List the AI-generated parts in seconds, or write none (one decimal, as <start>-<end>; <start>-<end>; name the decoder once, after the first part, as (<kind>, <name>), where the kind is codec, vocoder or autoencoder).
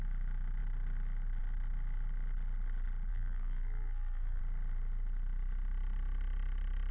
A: 3.1-4.4 (codec, SNAC)